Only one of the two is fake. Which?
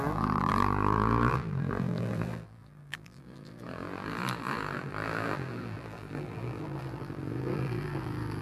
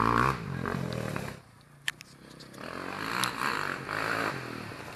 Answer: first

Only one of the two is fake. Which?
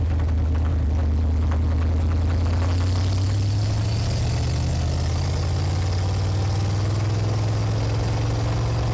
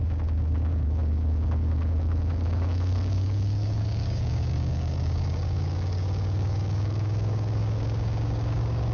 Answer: second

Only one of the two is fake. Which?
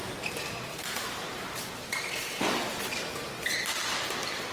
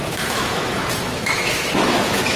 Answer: second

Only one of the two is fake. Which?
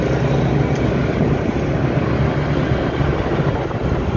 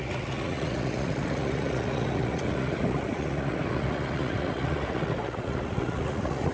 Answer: second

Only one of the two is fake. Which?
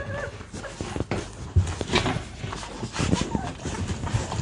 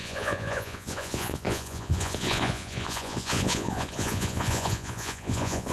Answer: second